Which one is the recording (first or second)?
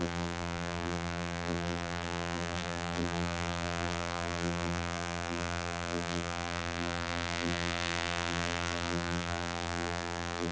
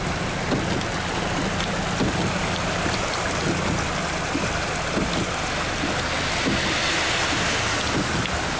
second